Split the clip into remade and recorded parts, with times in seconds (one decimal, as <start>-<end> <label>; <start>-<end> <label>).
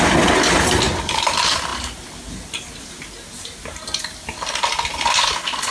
0.0-5.7 recorded